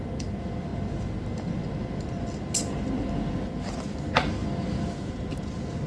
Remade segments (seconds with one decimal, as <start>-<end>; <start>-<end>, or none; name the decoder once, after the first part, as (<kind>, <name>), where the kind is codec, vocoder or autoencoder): none